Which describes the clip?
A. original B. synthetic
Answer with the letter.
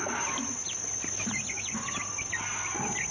A